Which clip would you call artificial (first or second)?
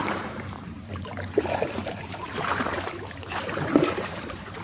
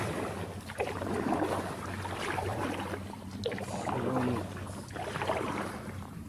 first